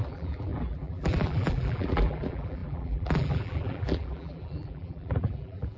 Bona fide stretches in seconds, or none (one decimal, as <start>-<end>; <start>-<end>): none